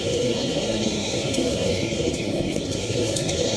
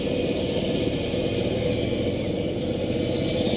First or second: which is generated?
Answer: first